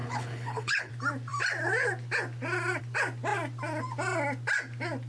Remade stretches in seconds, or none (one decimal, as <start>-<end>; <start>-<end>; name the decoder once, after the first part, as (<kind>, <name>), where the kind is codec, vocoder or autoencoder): 0.0-0.9 (codec, HILCodec)